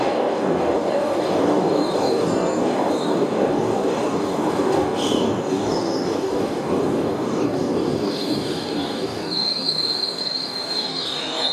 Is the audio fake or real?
fake